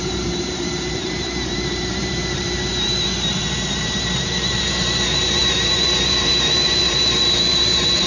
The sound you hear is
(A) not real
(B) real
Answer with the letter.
A